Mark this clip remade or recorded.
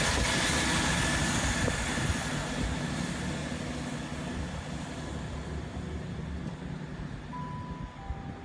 recorded